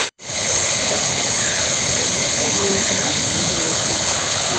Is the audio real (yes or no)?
no